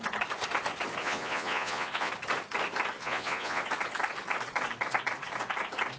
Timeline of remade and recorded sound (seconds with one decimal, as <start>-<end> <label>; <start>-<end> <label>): 0.0-1.0 recorded; 1.0-2.1 remade; 2.1-3.0 recorded; 3.0-3.6 remade; 3.6-6.0 recorded